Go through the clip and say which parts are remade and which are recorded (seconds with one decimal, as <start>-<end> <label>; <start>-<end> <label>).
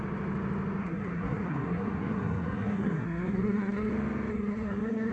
0.0-0.8 recorded; 0.8-3.9 remade; 3.9-4.3 recorded; 4.3-5.1 remade